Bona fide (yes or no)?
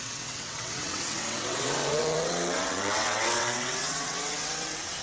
no